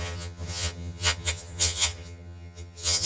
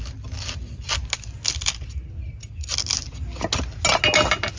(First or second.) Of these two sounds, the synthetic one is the first